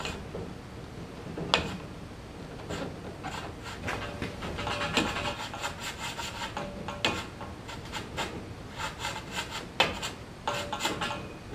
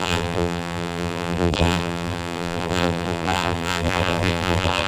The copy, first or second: second